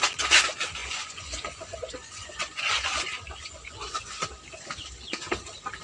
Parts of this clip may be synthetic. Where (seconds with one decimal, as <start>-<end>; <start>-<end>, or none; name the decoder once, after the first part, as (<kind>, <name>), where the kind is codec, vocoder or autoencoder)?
0.8-4.3 (vocoder, Vocos)